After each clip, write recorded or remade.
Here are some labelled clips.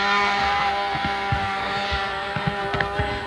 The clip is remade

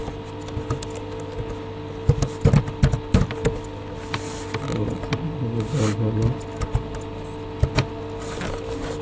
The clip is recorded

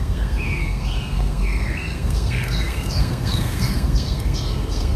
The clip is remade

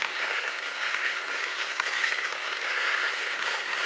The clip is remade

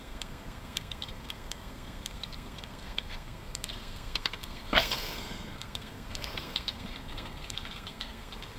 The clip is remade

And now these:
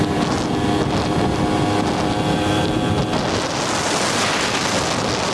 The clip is recorded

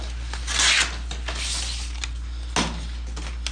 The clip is recorded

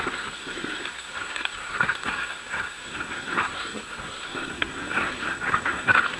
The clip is remade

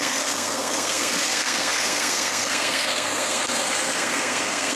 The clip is remade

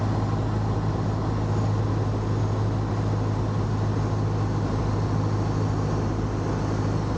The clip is recorded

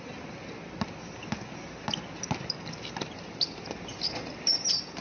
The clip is recorded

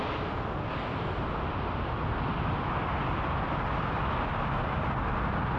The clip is recorded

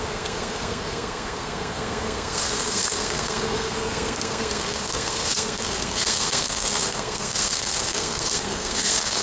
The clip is remade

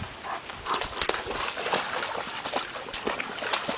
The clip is recorded